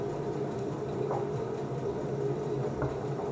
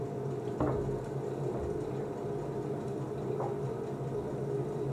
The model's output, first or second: first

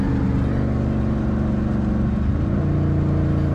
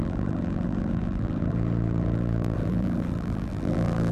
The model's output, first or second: second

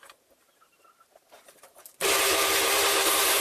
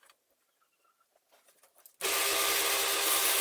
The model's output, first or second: first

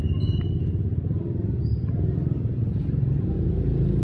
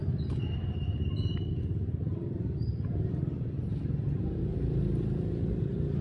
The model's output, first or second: second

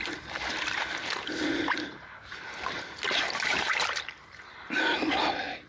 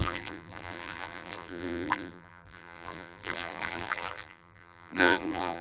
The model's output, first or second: second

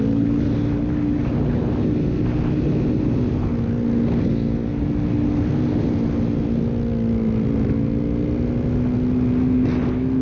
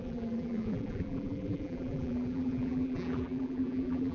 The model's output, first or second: second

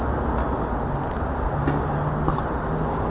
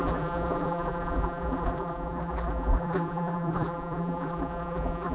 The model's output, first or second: second